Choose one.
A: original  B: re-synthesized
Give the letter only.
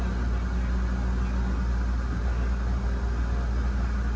A